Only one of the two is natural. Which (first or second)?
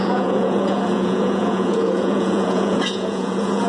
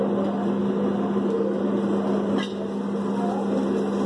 second